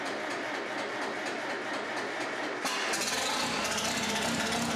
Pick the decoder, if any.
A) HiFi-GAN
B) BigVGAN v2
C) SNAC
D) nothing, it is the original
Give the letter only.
D